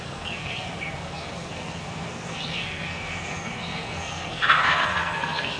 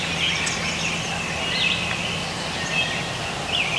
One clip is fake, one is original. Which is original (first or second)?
second